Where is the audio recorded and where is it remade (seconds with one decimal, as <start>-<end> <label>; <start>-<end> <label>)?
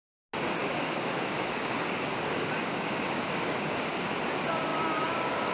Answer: 0.0-0.6 recorded; 0.6-3.9 remade; 3.9-4.7 recorded; 4.7-5.5 remade